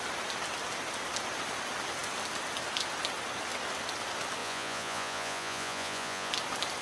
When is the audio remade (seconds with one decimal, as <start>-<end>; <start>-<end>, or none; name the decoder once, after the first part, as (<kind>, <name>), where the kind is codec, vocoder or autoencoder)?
4.4-6.3 (vocoder, Vocos)